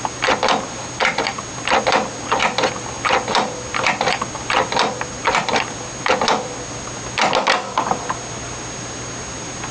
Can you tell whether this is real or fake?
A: real